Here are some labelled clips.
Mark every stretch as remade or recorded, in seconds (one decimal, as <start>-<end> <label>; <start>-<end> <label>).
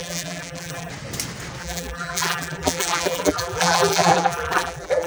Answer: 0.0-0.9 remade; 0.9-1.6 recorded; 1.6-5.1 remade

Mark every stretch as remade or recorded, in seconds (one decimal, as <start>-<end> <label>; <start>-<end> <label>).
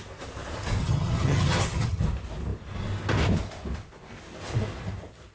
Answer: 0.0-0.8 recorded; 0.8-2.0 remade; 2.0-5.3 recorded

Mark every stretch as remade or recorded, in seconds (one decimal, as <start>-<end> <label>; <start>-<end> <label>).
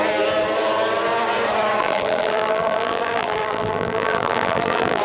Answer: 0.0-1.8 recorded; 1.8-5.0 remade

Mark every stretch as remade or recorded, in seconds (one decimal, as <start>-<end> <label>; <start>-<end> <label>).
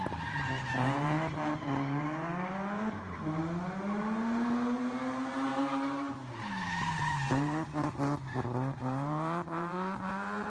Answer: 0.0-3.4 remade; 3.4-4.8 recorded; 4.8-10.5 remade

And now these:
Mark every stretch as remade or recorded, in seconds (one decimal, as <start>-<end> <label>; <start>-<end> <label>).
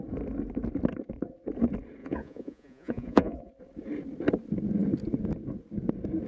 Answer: 0.0-2.0 recorded; 2.0-3.5 remade; 3.5-6.3 recorded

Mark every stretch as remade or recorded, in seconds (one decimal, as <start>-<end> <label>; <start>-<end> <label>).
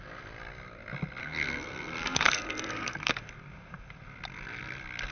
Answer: 0.0-1.2 recorded; 1.2-3.2 remade; 3.2-5.1 recorded